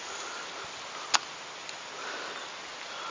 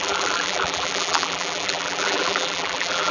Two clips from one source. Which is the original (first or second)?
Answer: first